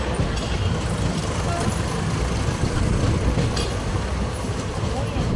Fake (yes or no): no